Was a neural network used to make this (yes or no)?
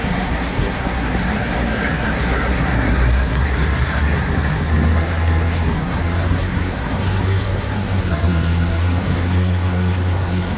yes